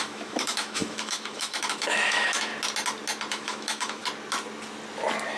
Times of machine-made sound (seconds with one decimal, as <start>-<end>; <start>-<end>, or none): 0.0-2.5; 3.3-4.0